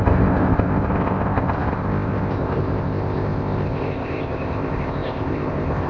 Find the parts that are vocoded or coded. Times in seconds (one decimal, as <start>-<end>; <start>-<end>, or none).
0.0-5.9